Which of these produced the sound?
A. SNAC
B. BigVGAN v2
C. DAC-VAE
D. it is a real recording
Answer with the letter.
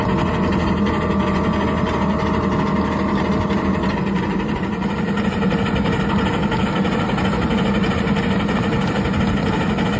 D